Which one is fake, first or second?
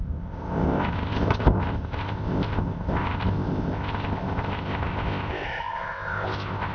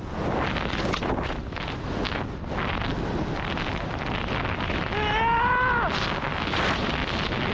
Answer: first